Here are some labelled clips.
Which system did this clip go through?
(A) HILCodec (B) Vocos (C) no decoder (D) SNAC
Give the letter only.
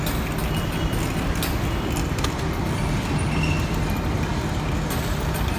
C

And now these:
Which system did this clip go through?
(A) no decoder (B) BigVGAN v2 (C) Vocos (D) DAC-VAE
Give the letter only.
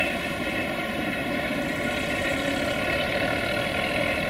A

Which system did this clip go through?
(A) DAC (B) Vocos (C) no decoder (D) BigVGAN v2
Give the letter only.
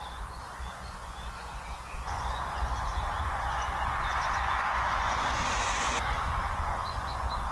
B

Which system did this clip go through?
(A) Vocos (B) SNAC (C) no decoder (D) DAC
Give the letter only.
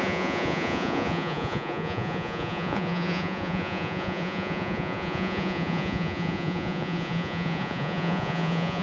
A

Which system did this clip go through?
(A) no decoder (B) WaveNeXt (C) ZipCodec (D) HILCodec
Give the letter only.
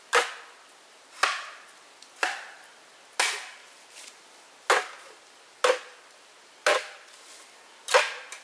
A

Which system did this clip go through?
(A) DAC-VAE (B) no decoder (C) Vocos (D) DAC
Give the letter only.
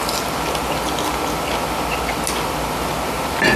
B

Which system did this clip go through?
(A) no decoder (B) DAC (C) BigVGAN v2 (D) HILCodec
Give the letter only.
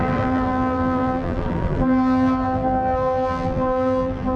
C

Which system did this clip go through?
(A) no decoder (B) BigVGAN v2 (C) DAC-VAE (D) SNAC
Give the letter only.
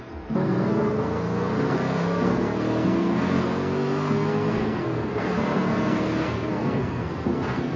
D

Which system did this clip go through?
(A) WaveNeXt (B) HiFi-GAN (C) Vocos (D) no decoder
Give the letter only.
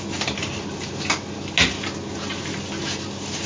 D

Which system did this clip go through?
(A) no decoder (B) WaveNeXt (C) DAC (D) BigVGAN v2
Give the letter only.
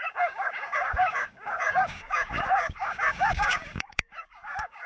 C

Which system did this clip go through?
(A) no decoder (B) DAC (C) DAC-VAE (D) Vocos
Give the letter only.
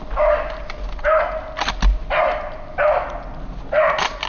A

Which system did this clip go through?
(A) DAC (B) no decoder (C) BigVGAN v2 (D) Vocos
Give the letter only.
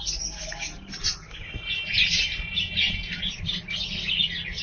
B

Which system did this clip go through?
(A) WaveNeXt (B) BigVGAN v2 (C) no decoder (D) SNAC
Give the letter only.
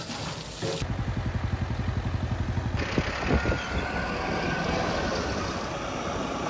C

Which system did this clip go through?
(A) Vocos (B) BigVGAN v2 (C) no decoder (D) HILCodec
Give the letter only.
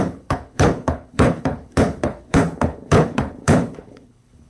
D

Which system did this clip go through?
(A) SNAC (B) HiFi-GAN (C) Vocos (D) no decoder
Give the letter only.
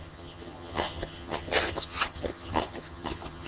B